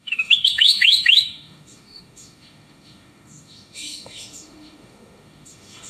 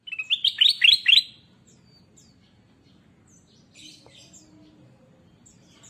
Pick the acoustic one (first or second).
second